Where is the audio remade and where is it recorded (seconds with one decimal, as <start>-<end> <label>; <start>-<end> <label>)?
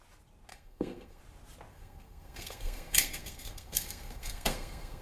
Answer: 0.0-0.5 recorded; 0.5-1.2 remade; 1.2-1.7 recorded; 1.7-5.0 remade